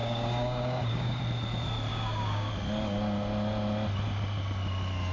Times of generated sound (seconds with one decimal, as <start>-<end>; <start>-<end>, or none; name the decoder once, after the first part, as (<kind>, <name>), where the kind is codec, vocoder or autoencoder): 0.0-1.2 (codec, DAC); 1.9-2.5